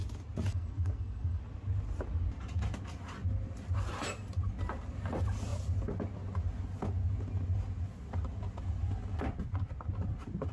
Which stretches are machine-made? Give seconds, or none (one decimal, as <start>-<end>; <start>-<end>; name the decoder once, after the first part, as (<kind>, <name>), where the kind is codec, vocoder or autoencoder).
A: 0.5-1.4 (codec, SNAC)